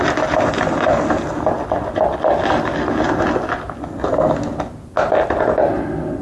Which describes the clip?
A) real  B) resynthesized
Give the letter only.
A